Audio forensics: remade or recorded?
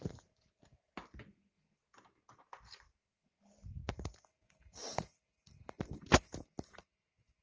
recorded